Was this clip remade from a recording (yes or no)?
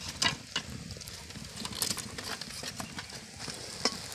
no